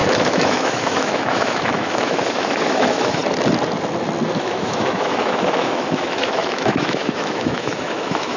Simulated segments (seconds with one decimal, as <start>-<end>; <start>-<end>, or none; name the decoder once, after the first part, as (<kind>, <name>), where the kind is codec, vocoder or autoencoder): 0.0-3.2 (autoencoder, DAC-VAE); 4.4-8.4